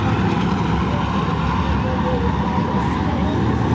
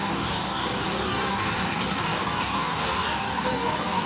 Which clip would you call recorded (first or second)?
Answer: first